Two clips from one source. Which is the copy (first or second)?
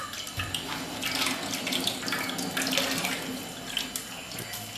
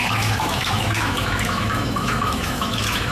second